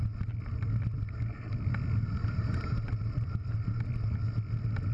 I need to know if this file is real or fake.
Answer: real